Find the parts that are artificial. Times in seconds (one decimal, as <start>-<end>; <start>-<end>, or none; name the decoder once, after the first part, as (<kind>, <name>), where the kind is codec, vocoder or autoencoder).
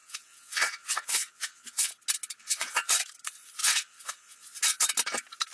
0.0-1.9 (vocoder, WaveNeXt); 2.4-2.9; 3.6-4.5